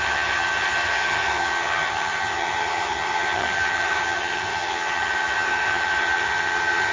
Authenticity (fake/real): fake